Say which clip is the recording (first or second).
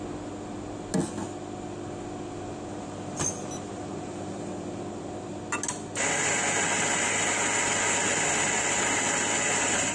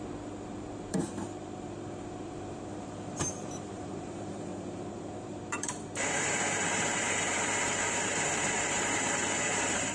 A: first